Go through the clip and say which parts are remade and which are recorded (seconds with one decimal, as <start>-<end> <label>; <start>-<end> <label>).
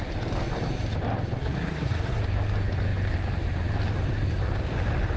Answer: 0.0-1.4 recorded; 1.4-2.2 remade; 2.2-5.2 recorded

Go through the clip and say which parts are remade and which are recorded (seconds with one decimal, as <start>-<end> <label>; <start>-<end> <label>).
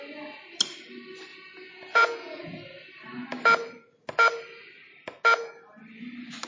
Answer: 0.0-1.3 recorded; 1.3-2.6 remade; 2.6-6.5 recorded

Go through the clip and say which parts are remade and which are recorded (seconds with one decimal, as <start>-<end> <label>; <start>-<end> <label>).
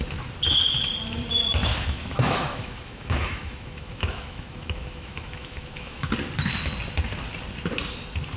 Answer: 0.0-1.6 recorded; 1.6-6.1 remade; 6.1-8.4 recorded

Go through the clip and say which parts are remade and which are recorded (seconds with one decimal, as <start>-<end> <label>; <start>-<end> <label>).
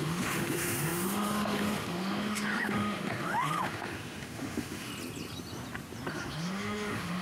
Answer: 0.0-4.9 remade; 4.9-6.1 recorded; 6.1-7.2 remade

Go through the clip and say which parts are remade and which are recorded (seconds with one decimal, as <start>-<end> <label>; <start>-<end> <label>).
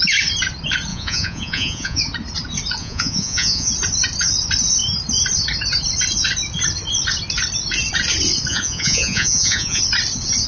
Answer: 0.0-0.9 recorded; 0.9-2.0 remade; 2.0-2.8 recorded; 2.8-3.7 remade; 3.7-8.5 recorded; 8.5-9.8 remade; 9.8-10.5 recorded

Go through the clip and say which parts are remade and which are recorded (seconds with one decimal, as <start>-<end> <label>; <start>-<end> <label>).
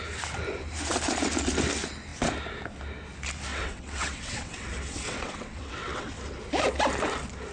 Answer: 0.0-3.5 recorded; 3.5-6.4 remade; 6.4-7.5 recorded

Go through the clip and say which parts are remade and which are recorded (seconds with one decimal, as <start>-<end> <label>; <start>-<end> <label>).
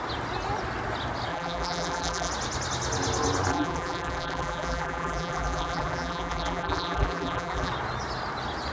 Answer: 0.0-1.3 recorded; 1.3-2.3 remade; 2.3-3.5 recorded; 3.5-7.7 remade; 7.7-8.7 recorded